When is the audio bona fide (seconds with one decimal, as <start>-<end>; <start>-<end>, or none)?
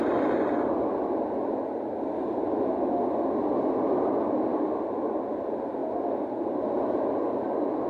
0.0-4.5; 5.0-7.9